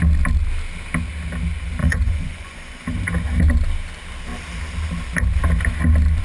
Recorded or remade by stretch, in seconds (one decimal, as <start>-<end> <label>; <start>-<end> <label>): 0.0-1.8 recorded; 1.8-2.9 remade; 2.9-6.2 recorded